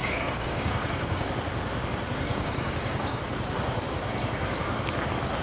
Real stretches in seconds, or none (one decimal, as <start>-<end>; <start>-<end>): 1.3-2.3; 3.2-5.4